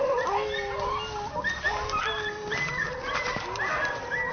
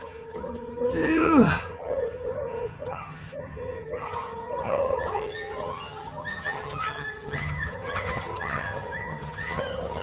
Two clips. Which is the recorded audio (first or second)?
first